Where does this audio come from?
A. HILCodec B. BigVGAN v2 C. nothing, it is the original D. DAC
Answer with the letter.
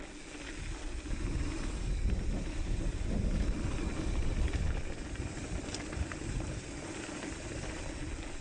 C